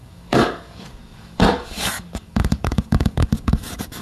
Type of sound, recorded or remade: remade